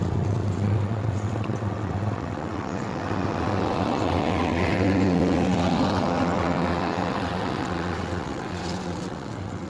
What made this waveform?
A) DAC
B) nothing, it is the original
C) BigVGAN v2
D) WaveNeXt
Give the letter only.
D